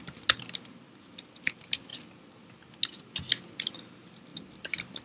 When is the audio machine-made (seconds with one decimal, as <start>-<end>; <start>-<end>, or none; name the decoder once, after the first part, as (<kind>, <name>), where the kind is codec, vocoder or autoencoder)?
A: none